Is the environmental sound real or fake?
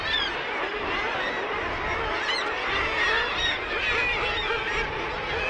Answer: real